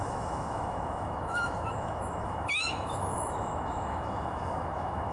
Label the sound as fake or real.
fake